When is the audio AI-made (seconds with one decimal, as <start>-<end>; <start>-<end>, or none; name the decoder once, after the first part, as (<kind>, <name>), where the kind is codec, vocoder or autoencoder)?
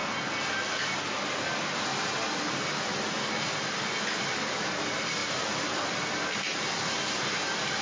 5.2-6.1 (vocoder, BigVGAN v2)